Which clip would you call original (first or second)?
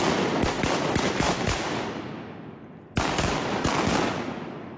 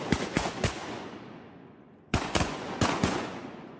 first